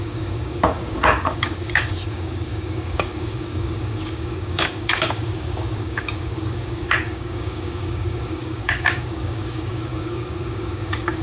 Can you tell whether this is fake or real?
fake